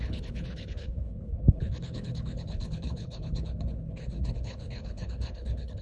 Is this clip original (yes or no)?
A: no